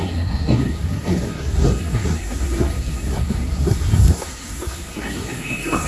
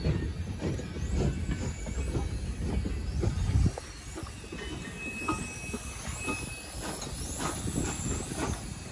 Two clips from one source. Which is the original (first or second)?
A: second